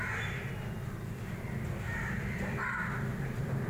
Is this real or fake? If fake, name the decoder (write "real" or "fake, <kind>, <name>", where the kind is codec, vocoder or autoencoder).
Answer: real